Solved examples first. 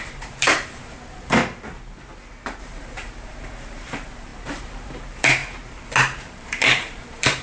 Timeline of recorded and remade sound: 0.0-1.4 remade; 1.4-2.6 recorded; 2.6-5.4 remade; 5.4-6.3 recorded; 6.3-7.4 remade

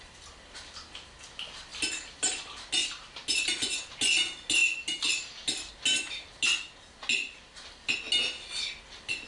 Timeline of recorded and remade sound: 0.0-9.3 recorded

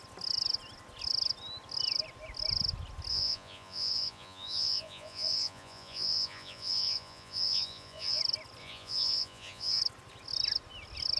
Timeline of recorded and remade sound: 0.0-3.1 recorded; 3.1-8.2 remade; 8.2-8.6 recorded; 8.6-9.8 remade; 9.8-11.2 recorded